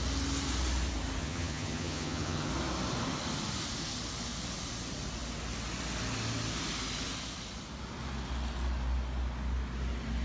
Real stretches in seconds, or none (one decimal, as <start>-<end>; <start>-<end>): 0.0-1.2; 2.5-10.2